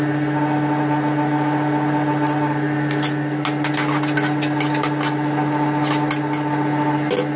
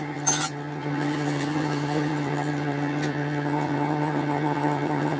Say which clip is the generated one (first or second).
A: second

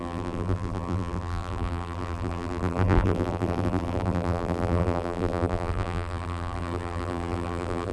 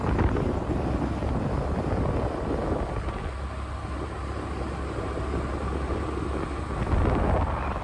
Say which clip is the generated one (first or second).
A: first